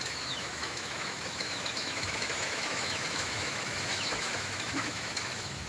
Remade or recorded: remade